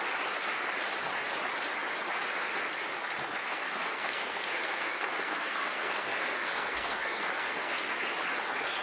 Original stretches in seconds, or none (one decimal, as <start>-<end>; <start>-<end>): 0.0-3.4; 8.0-8.8